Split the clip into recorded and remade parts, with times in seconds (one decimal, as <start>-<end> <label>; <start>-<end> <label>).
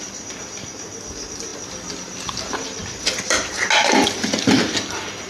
0.0-5.3 recorded